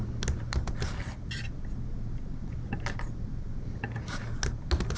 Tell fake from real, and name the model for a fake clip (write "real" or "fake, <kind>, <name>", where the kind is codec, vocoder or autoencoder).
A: real